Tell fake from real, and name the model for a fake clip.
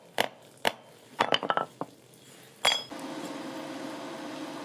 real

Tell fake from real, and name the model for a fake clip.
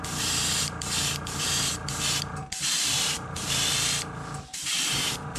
fake, vocoder, BigVGAN v2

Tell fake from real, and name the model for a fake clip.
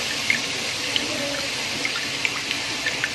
real